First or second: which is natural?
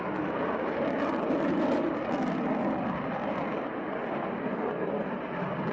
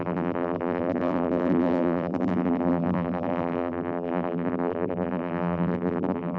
first